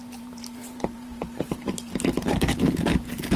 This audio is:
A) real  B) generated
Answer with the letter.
B